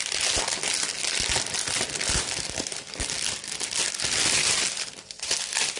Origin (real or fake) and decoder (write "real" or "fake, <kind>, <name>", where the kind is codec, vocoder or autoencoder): real